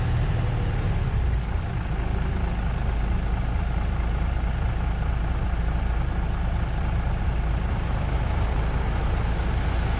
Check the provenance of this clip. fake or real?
real